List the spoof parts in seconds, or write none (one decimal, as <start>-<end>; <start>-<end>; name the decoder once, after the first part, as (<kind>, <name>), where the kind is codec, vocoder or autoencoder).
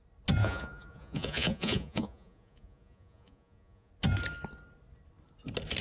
0.4-3.9 (vocoder, Vocos)